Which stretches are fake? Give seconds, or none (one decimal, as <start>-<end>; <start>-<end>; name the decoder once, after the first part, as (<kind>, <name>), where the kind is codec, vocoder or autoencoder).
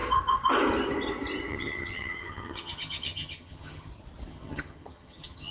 1.5-3.9 (vocoder, HiFi-GAN); 4.3-5.5